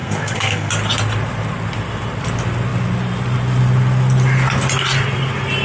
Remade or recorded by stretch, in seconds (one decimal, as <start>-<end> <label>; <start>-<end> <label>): 0.0-0.7 remade; 0.7-5.6 recorded